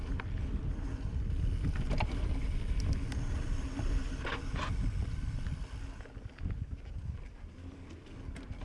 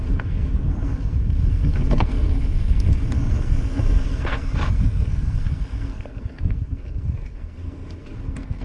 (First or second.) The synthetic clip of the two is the second